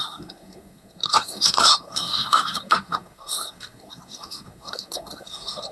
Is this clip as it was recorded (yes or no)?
no